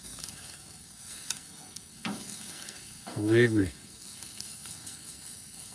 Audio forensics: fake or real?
fake